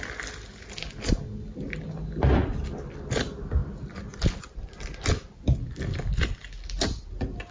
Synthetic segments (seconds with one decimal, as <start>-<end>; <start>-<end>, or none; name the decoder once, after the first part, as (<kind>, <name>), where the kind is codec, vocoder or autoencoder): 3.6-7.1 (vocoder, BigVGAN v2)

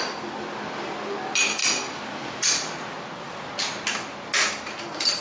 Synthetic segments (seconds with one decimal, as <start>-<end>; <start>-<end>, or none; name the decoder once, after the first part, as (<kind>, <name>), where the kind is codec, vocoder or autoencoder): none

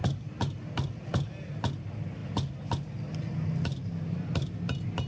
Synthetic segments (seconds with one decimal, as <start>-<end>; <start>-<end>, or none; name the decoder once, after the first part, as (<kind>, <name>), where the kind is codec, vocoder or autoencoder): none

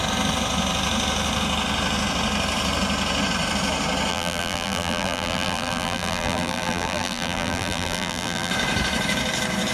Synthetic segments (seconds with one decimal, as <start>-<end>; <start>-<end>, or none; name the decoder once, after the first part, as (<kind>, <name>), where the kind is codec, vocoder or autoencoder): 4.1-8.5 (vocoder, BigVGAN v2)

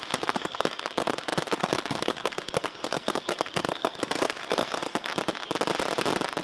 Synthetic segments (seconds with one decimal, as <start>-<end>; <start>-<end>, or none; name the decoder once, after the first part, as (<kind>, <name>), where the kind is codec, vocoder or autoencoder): 0.0-5.1 (codec, SNAC)